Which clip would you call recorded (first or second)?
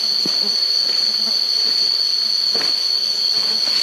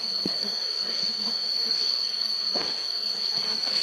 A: first